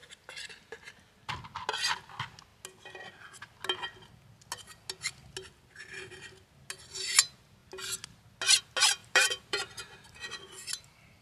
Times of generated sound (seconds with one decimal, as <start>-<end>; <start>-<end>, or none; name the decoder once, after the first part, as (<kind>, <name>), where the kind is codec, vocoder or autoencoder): 9.0-9.7 (vocoder, BigVGAN v2)

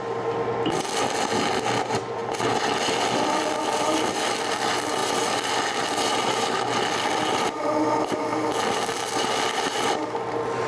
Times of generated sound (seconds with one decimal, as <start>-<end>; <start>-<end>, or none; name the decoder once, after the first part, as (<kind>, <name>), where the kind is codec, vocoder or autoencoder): none